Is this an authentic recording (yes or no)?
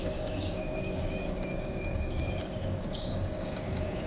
no